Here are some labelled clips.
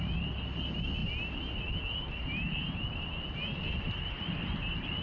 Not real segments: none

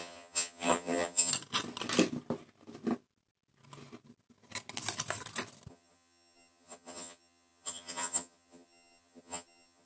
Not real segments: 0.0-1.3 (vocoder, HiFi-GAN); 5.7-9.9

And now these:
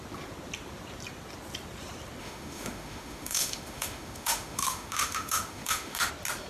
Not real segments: 2.2-6.1 (autoencoder, DAC-VAE)

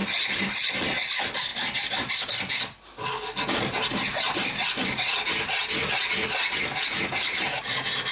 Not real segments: 1.5-2.1 (vocoder, BigVGAN v2)

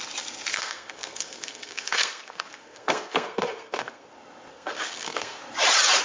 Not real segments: 0.5-4.1 (codec, SNAC); 4.5-5.4

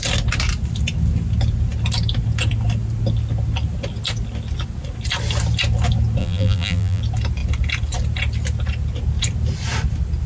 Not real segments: 6.2-7.0 (vocoder, BigVGAN v2)